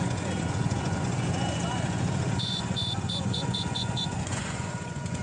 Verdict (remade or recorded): remade